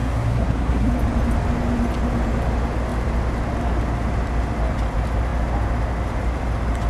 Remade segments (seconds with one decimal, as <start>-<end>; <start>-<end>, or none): 0.0-0.9